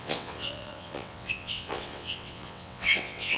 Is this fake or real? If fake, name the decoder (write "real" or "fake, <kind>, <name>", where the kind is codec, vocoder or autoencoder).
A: fake, vocoder, WaveNeXt